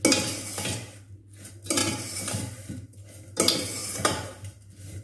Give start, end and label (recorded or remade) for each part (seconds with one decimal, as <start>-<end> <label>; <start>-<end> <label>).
0.0-1.8 recorded; 1.8-3.0 remade; 3.0-3.8 recorded; 3.8-5.0 remade